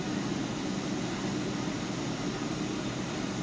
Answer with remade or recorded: recorded